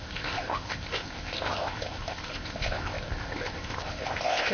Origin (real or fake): fake